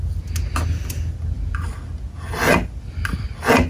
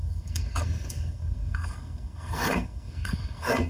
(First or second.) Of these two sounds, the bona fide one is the first